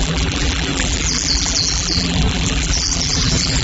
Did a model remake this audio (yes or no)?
yes